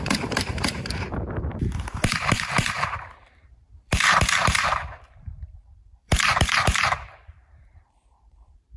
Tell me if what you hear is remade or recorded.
remade